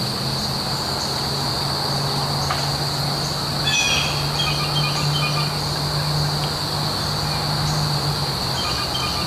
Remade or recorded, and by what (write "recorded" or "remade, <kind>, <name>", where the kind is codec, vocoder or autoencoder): recorded